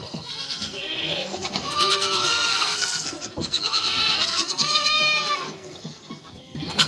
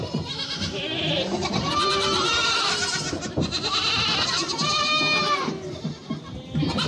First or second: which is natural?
second